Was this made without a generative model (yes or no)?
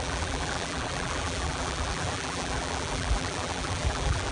no